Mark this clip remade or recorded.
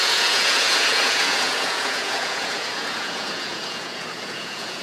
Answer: remade